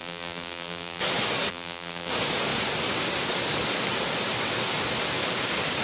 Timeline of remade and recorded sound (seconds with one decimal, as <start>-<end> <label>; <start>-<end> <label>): 0.0-1.0 remade; 1.0-1.5 recorded; 1.5-2.1 remade; 2.1-5.8 recorded

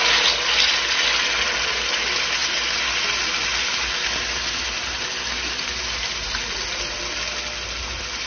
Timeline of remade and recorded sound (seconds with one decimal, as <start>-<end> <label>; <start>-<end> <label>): 0.0-8.3 recorded

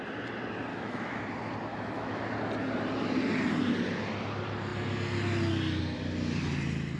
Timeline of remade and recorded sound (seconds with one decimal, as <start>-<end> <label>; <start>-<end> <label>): 0.0-0.7 recorded; 0.7-1.2 remade; 1.2-1.7 recorded; 1.7-2.2 remade; 2.2-7.0 recorded

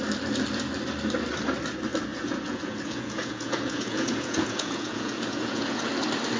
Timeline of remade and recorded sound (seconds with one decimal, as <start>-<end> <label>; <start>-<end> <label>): 0.0-2.1 recorded; 2.1-5.9 remade; 5.9-6.4 recorded

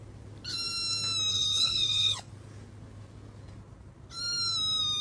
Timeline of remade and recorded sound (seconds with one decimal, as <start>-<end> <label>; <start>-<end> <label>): 0.0-1.3 recorded; 1.3-2.3 remade; 2.3-5.0 recorded

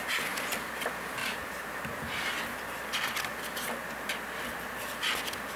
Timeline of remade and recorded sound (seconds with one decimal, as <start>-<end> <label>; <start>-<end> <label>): 0.0-1.2 recorded; 1.2-1.8 remade; 1.8-5.6 recorded

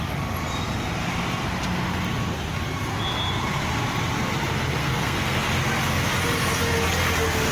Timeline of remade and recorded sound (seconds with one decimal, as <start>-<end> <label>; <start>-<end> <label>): 0.0-4.8 recorded; 4.8-5.4 remade; 5.4-7.5 recorded